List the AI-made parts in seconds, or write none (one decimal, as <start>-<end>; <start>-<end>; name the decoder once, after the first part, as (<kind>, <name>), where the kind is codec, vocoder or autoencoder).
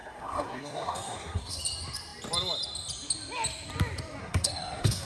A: 0.0-1.6 (codec, SNAC); 4.2-5.1